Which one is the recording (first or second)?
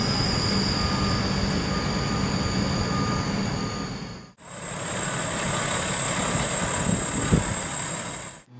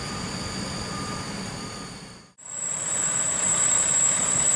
first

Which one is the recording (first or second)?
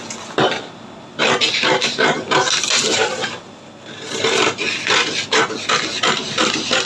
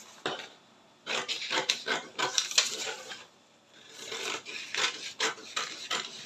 first